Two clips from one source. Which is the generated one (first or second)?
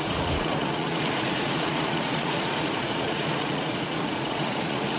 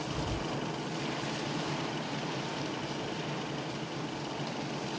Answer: first